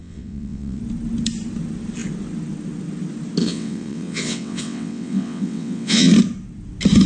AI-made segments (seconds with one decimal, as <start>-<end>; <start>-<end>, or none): 0.0-0.8; 3.4-6.1